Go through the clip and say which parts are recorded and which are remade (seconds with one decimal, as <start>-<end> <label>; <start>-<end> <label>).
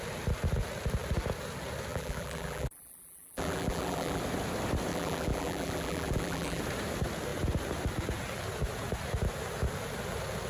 0.0-1.9 recorded; 1.9-4.2 remade; 4.2-4.9 recorded; 4.9-6.6 remade; 6.6-10.5 recorded